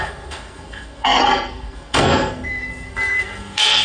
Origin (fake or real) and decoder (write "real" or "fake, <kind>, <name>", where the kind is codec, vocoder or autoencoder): fake, codec, SNAC